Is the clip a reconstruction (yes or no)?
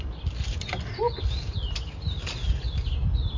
no